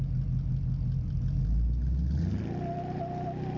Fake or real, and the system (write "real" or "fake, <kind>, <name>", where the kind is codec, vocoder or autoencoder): real